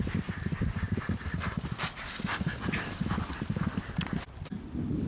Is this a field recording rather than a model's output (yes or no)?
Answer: yes